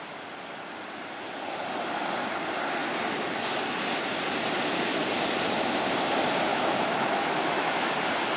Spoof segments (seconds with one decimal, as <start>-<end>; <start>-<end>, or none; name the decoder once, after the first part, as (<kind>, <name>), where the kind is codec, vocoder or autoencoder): 6.5-8.0 (autoencoder, DAC-VAE)